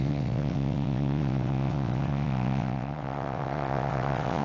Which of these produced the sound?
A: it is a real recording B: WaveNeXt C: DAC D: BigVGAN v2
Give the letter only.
B